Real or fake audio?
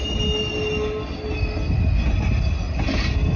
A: real